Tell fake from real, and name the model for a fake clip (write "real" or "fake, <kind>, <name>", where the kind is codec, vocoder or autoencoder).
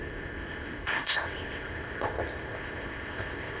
fake, codec, ZipCodec